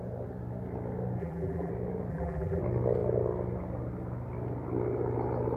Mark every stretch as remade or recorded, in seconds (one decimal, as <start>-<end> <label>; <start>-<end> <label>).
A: 0.0-1.2 recorded; 1.2-1.7 remade; 1.7-2.1 recorded; 2.1-2.6 remade; 2.6-5.6 recorded